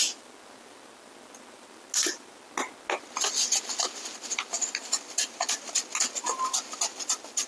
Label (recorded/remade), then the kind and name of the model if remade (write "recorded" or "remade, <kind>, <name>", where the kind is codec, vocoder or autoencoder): recorded